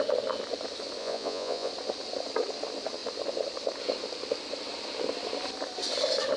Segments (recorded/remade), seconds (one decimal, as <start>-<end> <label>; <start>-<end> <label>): 0.0-1.0 recorded; 1.0-1.7 remade; 1.7-6.4 recorded